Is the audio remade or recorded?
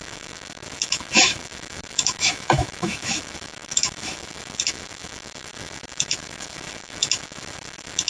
remade